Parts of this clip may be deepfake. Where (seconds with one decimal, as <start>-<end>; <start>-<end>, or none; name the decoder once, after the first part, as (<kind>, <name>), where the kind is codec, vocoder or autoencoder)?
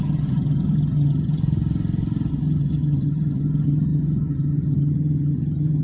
0.0-1.4 (vocoder, HiFi-GAN); 2.3-5.8